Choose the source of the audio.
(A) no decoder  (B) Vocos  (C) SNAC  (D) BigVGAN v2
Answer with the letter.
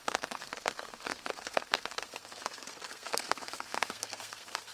C